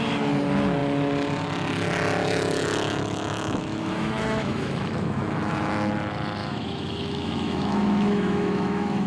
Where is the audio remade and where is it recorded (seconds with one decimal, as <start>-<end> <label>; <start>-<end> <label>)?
0.0-2.2 recorded; 2.2-5.7 remade; 5.7-6.4 recorded; 6.4-9.1 remade

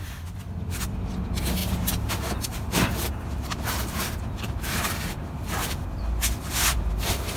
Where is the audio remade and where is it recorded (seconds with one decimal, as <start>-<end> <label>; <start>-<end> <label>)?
0.0-1.6 recorded; 1.6-2.1 remade; 2.1-2.5 recorded; 2.5-5.6 remade; 5.6-7.4 recorded

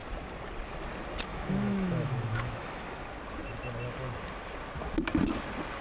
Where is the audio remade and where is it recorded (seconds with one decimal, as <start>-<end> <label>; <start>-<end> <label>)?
0.0-1.3 recorded; 1.3-2.9 remade; 2.9-5.8 recorded